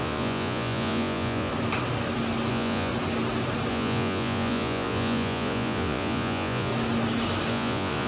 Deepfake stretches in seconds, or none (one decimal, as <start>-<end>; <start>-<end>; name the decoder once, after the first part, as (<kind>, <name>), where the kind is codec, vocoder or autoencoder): 0.0-1.5 (vocoder, Vocos); 2.5-2.9; 3.7-6.7; 7.5-8.1